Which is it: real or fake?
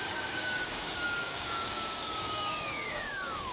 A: fake